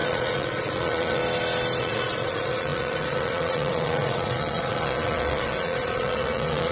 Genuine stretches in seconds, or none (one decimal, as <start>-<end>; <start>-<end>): 1.2-1.8